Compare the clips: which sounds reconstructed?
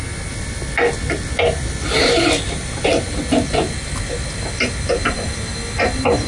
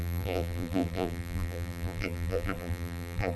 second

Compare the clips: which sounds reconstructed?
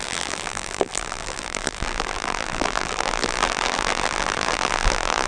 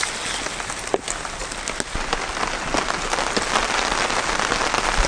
first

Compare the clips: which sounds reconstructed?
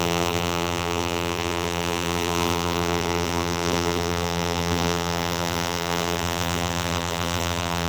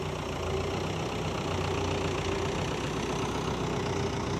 first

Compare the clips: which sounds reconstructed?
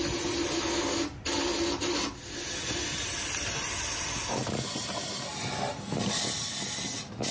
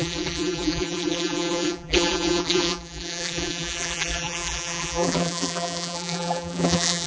second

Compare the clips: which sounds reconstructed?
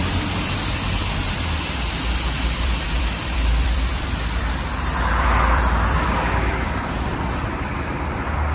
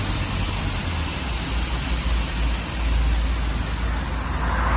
first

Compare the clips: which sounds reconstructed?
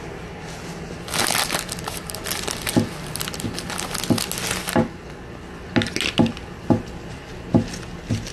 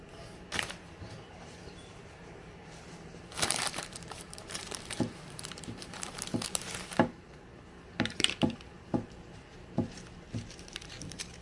second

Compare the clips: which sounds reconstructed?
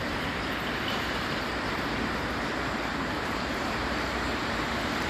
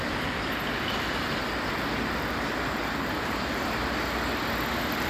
first